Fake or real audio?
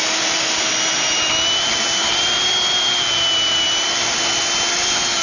real